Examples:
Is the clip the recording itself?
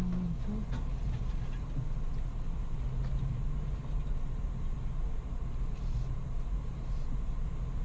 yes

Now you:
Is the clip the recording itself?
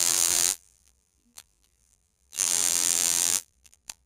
no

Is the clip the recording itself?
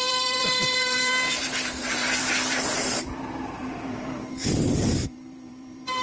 no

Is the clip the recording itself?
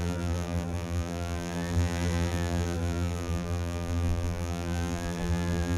no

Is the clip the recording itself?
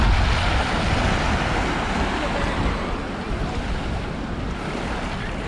yes